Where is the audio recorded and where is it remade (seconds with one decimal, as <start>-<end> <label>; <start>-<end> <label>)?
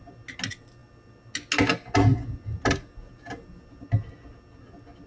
0.0-5.1 recorded